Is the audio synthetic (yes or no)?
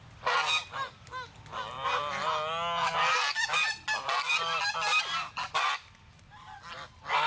no